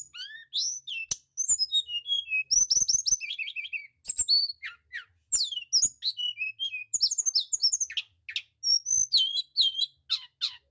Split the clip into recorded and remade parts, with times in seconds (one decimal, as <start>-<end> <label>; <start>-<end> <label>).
0.0-10.7 recorded